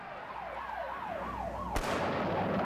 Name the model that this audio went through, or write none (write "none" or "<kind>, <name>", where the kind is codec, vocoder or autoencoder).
none